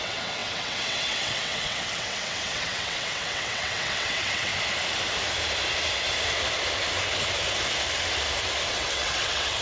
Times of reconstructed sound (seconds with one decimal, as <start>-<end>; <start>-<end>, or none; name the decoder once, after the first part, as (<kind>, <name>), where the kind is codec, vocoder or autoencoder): 0.0-4.5 (vocoder, WaveNeXt); 8.7-9.6